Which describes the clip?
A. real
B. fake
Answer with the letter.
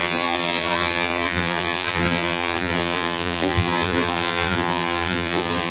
B